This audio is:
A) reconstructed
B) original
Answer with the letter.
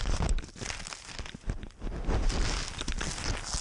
B